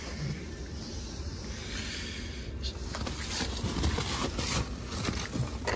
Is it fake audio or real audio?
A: real